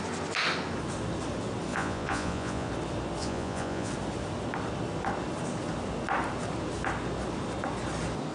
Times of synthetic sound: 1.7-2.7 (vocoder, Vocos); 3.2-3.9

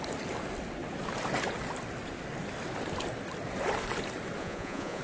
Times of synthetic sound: 4.4-5.0 (vocoder, Vocos)

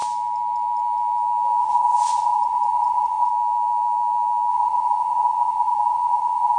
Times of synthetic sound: 1.6-3.3 (vocoder, Vocos); 4.5-6.6